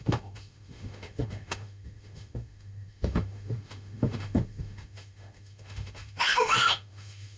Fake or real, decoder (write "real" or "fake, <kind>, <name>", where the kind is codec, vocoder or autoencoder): fake, autoencoder, DAC-VAE